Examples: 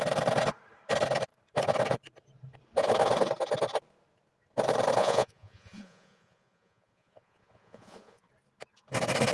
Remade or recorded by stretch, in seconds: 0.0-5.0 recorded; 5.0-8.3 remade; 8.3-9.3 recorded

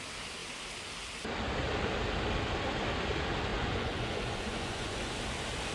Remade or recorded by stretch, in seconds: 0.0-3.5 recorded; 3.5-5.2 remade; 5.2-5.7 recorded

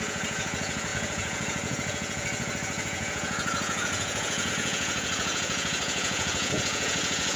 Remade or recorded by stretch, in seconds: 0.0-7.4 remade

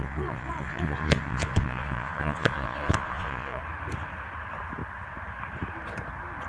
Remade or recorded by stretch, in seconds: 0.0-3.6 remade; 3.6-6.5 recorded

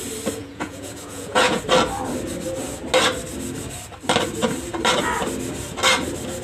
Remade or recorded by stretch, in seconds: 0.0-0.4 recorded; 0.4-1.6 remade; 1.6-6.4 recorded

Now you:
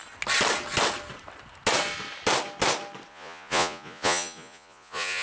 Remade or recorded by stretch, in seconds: 0.0-3.1 recorded; 3.1-5.2 remade

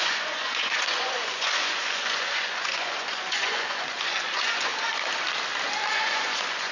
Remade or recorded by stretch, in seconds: 0.0-4.7 remade; 4.7-5.9 recorded; 5.9-6.7 remade